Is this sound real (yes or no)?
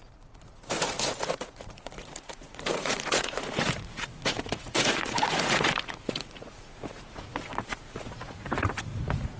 no